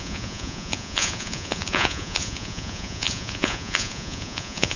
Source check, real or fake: fake